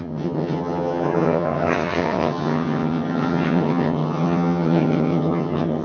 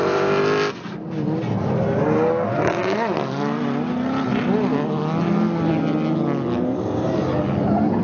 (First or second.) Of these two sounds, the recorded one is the second